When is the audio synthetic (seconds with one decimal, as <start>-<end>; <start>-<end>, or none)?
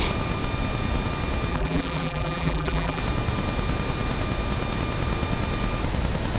1.5-3.0